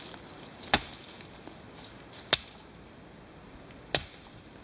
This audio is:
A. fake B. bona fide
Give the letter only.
B